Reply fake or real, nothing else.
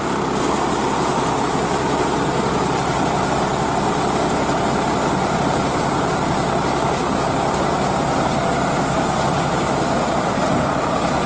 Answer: real